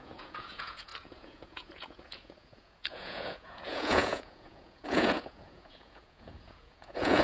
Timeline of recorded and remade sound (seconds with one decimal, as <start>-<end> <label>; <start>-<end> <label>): 0.0-7.2 remade